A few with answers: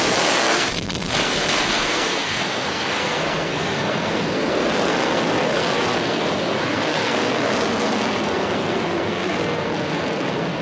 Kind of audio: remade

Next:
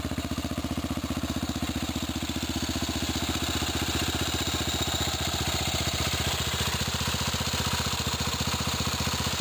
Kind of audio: recorded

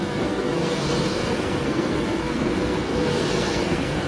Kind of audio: remade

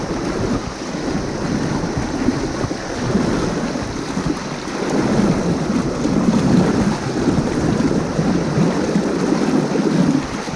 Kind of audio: recorded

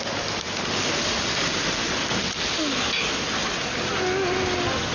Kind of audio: recorded